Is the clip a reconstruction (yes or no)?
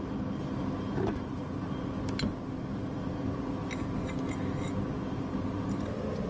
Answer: no